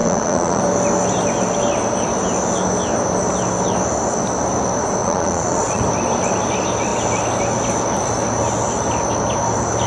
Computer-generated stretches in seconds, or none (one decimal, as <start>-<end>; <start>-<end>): 0.0-0.6; 5.0-5.8